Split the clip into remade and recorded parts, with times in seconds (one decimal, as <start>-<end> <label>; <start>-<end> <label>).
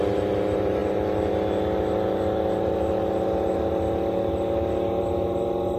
0.0-5.8 recorded